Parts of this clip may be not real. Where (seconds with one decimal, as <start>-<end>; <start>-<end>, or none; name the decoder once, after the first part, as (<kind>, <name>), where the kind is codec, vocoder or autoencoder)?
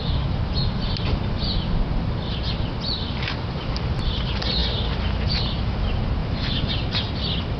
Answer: none